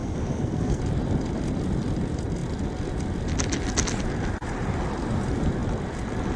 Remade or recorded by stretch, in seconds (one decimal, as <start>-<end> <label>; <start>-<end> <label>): 0.0-0.8 remade; 0.8-6.4 recorded

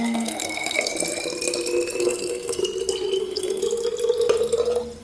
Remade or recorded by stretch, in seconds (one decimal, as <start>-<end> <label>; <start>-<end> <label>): 0.0-0.9 remade; 0.9-2.0 recorded; 2.0-2.6 remade; 2.6-3.2 recorded; 3.2-3.6 remade; 3.6-5.0 recorded

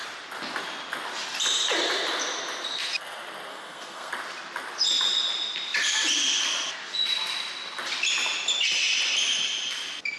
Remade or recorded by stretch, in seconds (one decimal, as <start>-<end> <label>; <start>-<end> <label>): 0.0-3.5 recorded; 3.5-4.1 remade; 4.1-10.2 recorded

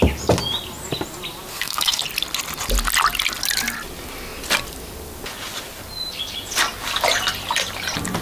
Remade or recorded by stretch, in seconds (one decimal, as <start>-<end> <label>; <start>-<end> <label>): 0.0-1.5 recorded; 1.5-2.0 remade; 2.0-8.2 recorded

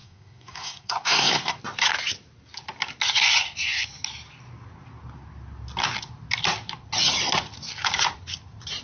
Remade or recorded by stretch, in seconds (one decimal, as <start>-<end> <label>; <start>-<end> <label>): 0.0-1.6 remade; 1.6-8.8 recorded

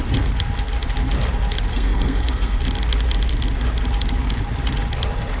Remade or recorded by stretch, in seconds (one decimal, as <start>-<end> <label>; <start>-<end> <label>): 0.0-1.7 recorded; 1.7-2.6 remade; 2.6-5.4 recorded

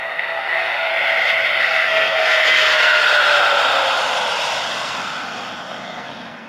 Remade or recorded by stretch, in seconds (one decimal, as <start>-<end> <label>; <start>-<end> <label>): 0.0-0.9 remade; 0.9-1.6 recorded; 1.6-3.0 remade; 3.0-4.7 recorded; 4.7-6.5 remade